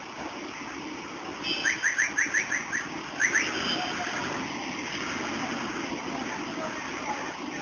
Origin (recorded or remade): recorded